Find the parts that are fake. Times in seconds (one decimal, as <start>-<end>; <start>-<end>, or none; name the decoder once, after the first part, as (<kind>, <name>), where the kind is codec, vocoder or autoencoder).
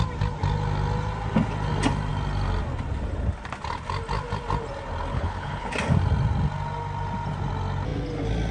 5.1-5.7 (codec, HILCodec)